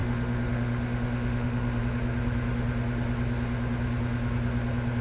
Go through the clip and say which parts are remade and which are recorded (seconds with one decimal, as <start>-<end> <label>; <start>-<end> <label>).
0.0-1.8 remade; 1.8-5.0 recorded